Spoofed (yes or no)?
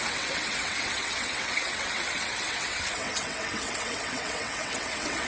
yes